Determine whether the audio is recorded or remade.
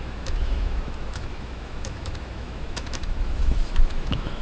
remade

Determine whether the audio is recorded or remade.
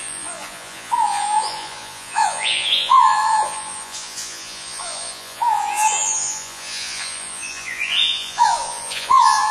remade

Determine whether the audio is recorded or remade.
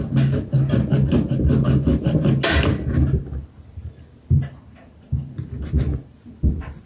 recorded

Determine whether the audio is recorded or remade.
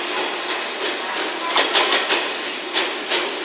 recorded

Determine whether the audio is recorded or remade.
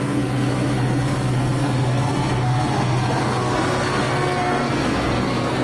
remade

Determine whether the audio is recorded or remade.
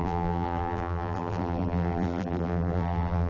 remade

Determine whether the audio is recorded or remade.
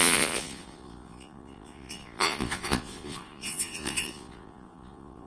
remade